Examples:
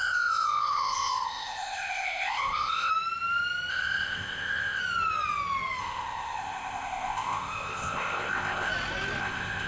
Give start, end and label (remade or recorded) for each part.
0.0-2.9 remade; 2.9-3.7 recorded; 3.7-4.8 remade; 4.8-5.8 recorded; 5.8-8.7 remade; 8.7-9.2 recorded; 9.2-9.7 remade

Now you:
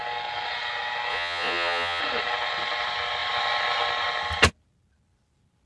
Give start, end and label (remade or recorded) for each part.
0.0-1.1 recorded; 1.1-2.0 remade; 2.0-5.7 recorded

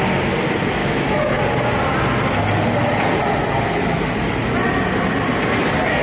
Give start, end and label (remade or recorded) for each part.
0.0-0.8 recorded; 0.8-1.4 remade; 1.4-6.0 recorded